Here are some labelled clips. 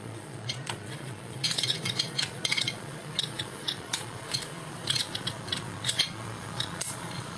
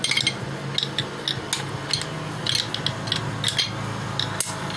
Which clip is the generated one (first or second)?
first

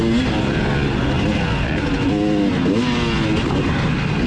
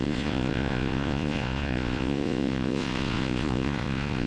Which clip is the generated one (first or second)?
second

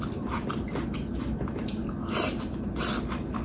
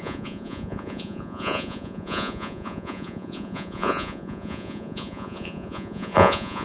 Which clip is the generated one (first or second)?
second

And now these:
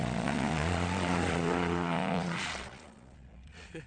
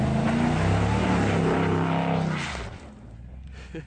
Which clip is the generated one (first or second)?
first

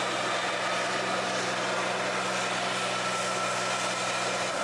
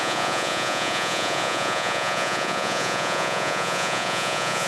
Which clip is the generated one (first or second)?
second